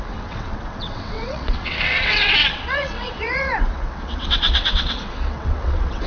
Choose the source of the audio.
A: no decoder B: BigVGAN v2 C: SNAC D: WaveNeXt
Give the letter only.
D